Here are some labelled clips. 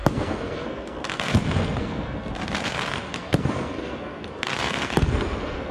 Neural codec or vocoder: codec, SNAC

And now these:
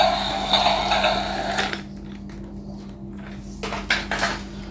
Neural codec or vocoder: none